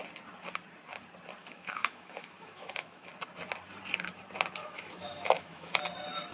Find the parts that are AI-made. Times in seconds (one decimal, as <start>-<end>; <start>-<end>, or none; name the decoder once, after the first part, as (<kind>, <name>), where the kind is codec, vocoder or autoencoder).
1.4-3.1 (autoencoder, DAC-VAE); 4.6-5.8